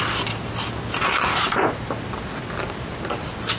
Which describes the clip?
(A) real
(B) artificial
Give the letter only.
A